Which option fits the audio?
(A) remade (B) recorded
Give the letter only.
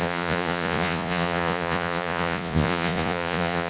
A